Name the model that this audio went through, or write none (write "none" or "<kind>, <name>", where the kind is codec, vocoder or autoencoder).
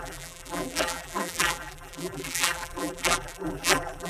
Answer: vocoder, BigVGAN v2